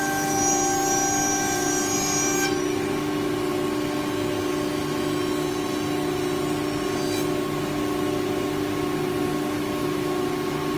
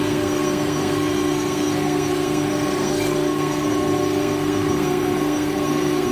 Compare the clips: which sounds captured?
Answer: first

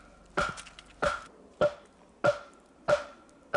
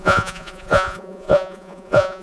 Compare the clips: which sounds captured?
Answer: first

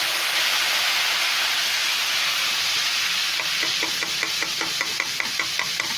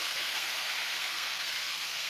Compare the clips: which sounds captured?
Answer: first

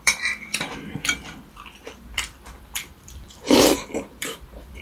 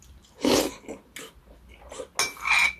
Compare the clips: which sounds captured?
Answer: second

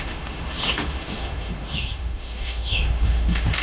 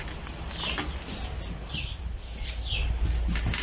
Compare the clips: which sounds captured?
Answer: second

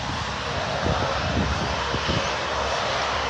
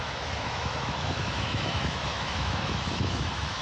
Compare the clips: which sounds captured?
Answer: first